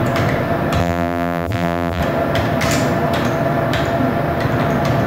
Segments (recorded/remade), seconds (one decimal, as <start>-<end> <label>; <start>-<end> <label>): 0.0-0.8 recorded; 0.8-2.0 remade; 2.0-5.1 recorded